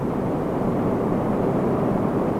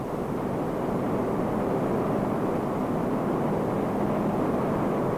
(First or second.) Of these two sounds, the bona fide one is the second